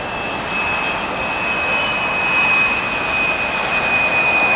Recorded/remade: recorded